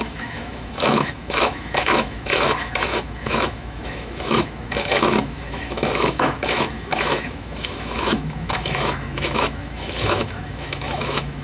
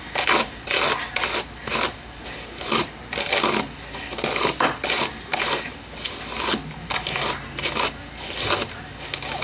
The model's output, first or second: first